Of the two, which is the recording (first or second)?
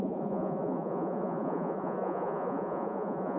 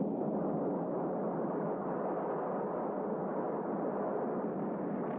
second